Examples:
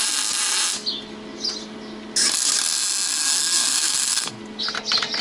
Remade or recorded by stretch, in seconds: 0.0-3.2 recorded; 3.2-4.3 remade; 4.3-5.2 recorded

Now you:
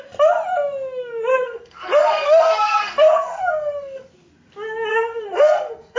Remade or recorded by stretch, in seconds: 0.0-1.3 recorded; 1.3-4.1 remade; 4.1-4.9 recorded; 4.9-6.0 remade

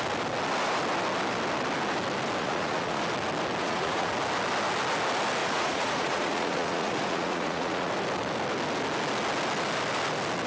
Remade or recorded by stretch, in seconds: 0.0-2.4 recorded; 2.4-3.0 remade; 3.0-3.6 recorded; 3.6-4.1 remade; 4.1-5.4 recorded; 5.4-7.9 remade; 7.9-10.5 recorded

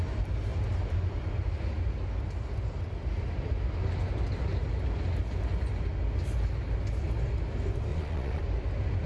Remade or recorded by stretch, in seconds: 0.0-7.9 recorded; 7.9-8.4 remade; 8.4-9.1 recorded